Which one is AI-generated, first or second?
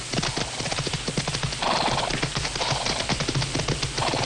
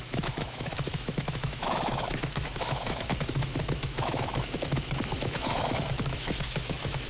second